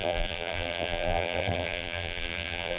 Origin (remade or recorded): remade